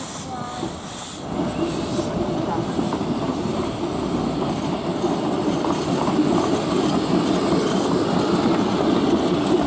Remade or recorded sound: recorded